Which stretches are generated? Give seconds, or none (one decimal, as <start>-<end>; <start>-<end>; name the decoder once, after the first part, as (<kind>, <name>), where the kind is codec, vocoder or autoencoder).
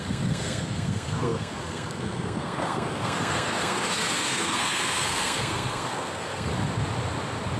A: 0.0-6.5 (codec, SNAC)